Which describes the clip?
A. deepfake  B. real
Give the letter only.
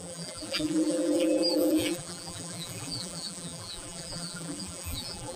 A